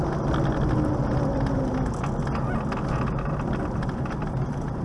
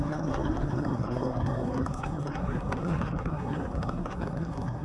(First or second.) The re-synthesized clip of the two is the second